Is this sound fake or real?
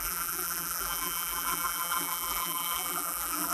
fake